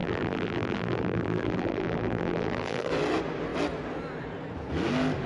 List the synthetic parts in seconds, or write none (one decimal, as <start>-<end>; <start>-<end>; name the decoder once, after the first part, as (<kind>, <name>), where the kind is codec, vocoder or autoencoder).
0.0-2.9 (vocoder, BigVGAN v2)